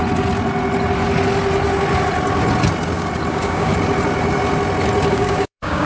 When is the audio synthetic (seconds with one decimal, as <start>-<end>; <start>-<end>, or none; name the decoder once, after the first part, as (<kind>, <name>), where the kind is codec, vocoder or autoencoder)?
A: 3.3-3.7 (codec, DAC); 5.1-5.9